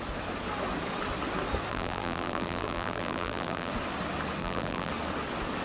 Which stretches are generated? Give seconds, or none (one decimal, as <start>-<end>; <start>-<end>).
1.7-3.7; 4.4-4.9